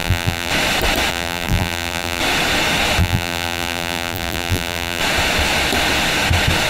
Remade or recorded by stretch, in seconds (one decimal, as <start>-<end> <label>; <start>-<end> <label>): 0.0-0.5 remade; 0.5-1.1 recorded; 1.1-2.2 remade; 2.2-3.0 recorded; 3.0-5.0 remade; 5.0-6.7 recorded